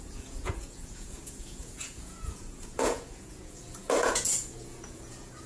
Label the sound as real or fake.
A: fake